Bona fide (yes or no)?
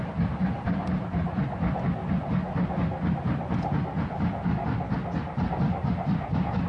yes